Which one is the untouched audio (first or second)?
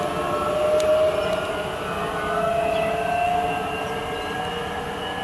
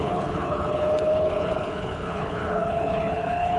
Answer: first